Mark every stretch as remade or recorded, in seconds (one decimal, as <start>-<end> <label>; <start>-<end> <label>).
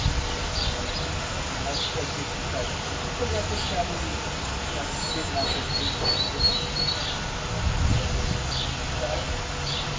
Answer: 0.0-10.0 recorded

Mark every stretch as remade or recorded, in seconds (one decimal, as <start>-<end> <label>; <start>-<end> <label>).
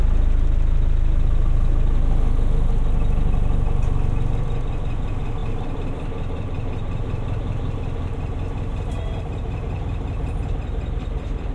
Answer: 0.0-5.4 recorded; 5.4-10.3 remade; 10.3-11.5 recorded